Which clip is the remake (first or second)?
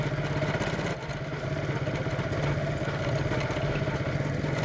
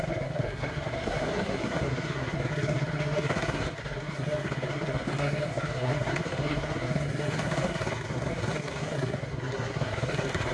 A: second